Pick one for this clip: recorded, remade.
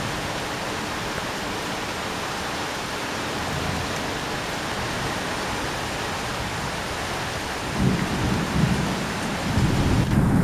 recorded